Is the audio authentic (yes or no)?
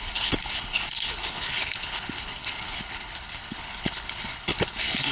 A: no